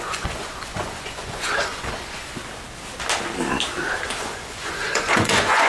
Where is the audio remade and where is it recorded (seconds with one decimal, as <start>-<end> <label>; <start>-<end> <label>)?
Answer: 0.0-2.4 remade; 2.4-4.2 recorded; 4.2-5.7 remade